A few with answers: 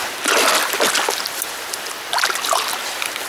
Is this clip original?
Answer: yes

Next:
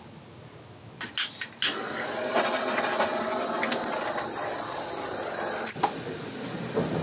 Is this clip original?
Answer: yes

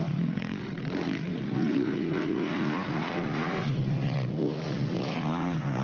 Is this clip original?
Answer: no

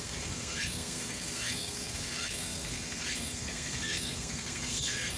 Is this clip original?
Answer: no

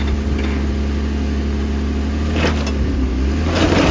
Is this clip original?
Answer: yes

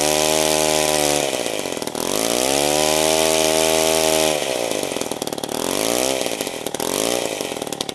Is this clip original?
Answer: yes